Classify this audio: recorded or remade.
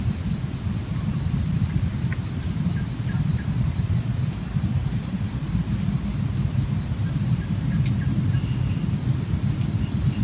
recorded